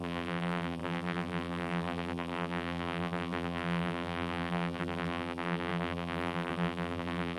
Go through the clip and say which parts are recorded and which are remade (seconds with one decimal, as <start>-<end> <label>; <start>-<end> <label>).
0.0-7.4 remade